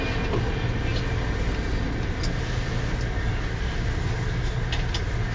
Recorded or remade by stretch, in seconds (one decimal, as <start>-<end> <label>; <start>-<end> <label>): 0.0-5.3 recorded